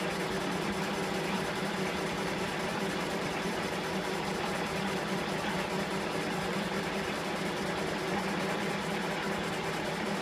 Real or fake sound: fake